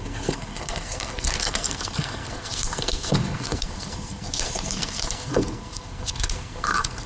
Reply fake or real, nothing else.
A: fake